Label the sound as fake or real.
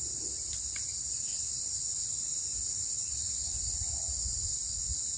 real